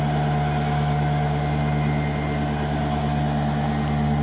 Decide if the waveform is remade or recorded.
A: recorded